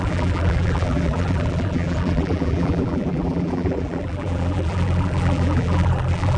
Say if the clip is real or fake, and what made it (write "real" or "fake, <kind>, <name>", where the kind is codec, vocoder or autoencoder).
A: fake, vocoder, BigVGAN v2